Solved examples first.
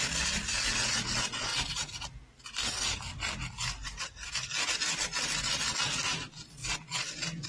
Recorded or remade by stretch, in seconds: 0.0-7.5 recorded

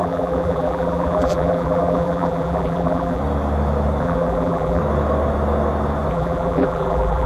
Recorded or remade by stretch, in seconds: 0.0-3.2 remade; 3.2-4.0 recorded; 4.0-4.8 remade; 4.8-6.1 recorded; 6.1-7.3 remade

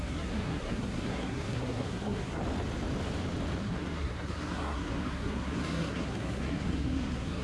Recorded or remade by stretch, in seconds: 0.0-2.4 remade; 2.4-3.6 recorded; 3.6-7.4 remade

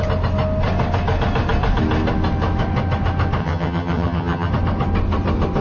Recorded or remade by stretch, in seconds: 0.0-3.4 recorded; 3.4-4.5 remade; 4.5-5.6 recorded

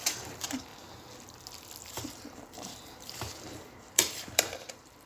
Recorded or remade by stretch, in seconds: 0.0-0.7 remade; 0.7-1.9 recorded; 1.9-5.1 remade